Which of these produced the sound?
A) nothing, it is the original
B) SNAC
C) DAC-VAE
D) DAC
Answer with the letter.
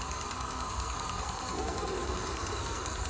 B